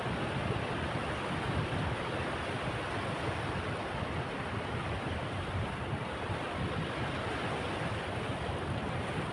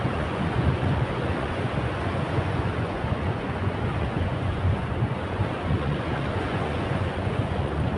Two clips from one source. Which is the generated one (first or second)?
second